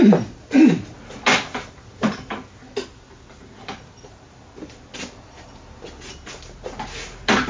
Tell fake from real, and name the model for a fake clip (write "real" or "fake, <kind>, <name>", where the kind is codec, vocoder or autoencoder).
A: real